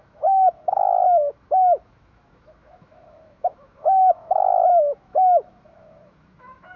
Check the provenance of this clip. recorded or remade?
remade